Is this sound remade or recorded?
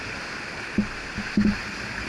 recorded